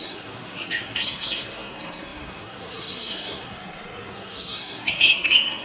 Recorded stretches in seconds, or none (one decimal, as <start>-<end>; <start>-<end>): none